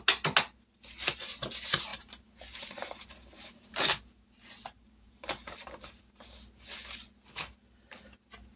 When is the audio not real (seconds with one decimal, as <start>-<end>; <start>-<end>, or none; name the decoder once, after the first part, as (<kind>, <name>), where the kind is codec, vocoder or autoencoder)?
1.9-6.0 (vocoder, BigVGAN v2)